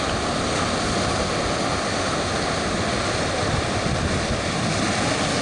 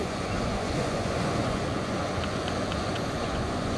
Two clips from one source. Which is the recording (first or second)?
first